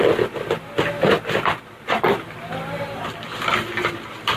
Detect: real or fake fake